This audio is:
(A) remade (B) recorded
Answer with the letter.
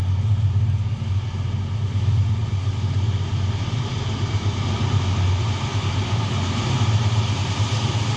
B